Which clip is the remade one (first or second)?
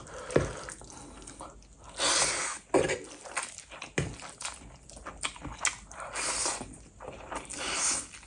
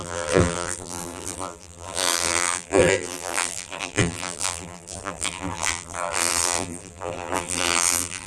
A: second